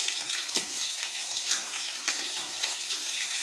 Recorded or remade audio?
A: remade